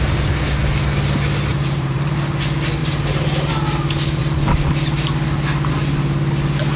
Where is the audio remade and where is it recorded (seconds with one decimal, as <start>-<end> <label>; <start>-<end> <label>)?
0.0-1.5 recorded; 1.5-2.2 remade; 2.2-2.8 recorded; 2.8-3.5 remade; 3.5-6.8 recorded